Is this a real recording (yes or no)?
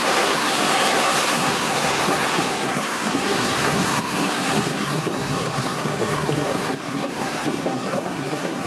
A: no